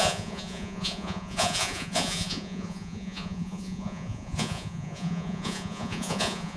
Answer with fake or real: fake